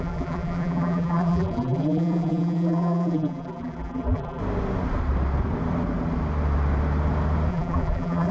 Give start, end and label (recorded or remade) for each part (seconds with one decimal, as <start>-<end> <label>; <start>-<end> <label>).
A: 0.0-4.4 remade; 4.4-7.5 recorded; 7.5-8.3 remade